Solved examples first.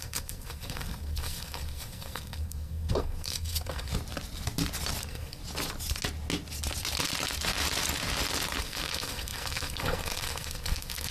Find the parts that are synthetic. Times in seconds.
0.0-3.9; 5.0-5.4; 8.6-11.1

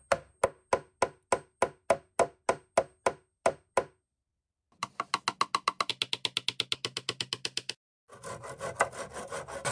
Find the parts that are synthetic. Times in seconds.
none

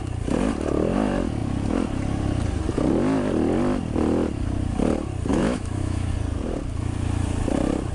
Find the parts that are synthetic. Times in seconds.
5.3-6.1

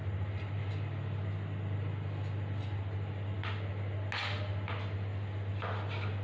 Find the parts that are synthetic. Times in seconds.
none

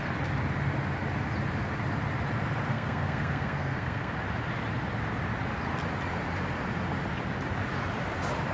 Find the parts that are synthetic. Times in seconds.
2.7-4.1

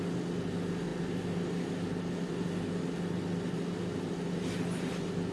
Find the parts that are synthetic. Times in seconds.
none

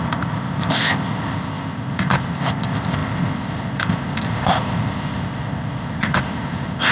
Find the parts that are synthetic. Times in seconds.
0.0-6.9

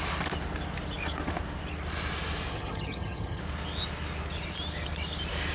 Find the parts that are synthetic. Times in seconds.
2.5-3.4